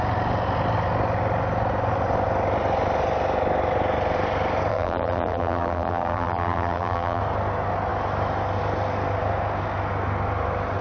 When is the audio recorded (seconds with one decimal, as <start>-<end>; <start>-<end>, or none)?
0.0-4.7; 7.2-10.8